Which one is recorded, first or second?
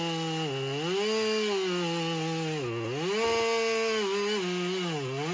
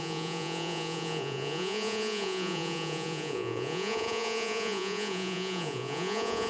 first